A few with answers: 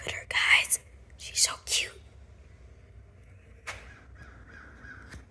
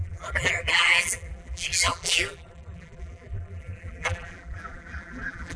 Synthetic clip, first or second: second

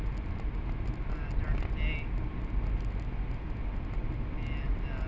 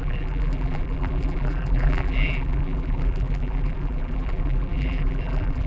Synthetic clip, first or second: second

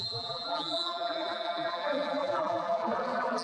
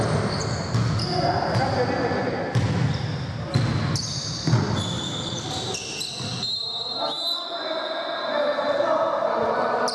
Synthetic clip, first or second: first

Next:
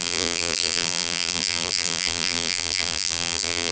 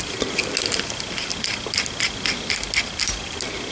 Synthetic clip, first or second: first